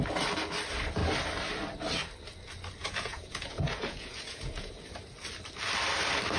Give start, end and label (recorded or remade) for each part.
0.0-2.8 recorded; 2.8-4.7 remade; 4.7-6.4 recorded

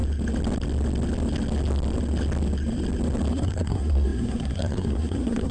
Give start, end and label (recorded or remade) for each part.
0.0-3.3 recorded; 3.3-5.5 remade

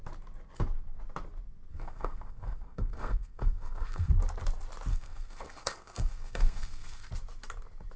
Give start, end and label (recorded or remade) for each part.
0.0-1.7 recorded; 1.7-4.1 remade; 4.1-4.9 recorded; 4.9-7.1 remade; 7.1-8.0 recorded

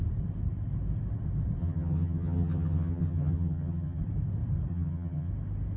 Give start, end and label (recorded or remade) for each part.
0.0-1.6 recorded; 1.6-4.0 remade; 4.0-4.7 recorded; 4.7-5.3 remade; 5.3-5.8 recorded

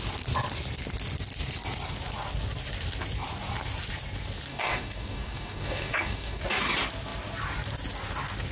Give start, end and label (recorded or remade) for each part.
0.0-4.5 recorded; 4.5-6.4 remade; 6.4-8.5 recorded